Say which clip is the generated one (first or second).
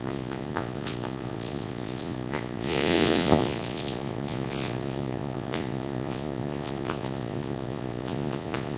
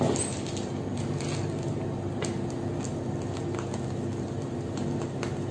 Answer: first